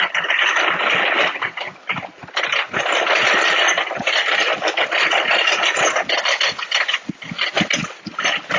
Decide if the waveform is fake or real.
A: real